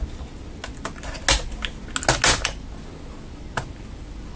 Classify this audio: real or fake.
real